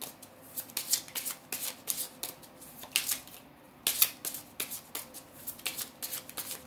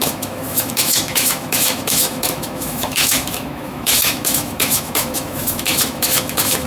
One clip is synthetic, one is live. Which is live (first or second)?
first